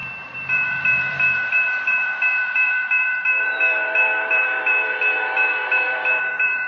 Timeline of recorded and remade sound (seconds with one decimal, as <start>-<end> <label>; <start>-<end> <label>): 0.0-6.7 remade